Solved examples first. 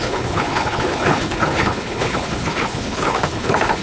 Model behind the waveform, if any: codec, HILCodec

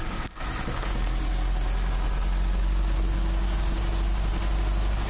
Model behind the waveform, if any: none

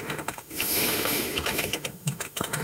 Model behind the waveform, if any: autoencoder, DAC-VAE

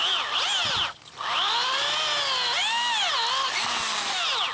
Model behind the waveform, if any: none